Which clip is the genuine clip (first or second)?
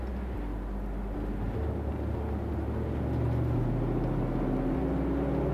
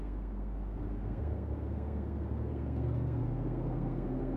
first